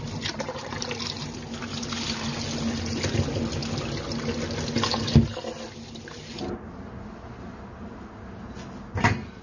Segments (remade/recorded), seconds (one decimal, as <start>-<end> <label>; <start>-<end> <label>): 0.0-9.4 recorded